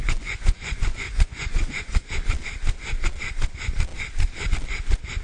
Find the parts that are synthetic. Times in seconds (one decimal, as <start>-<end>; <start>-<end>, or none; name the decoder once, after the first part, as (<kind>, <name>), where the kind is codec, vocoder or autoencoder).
0.0-2.1 (vocoder, Vocos)